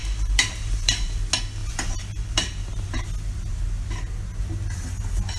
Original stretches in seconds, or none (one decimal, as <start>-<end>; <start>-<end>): 1.2-1.6; 3.1-5.4